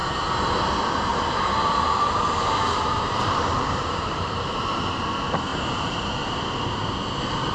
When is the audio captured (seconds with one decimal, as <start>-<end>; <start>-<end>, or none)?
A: 0.0-1.1; 5.0-7.5